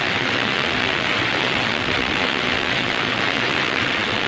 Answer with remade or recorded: remade